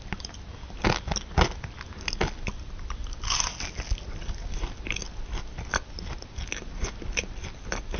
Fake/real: real